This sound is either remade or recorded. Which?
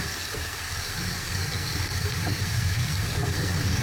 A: remade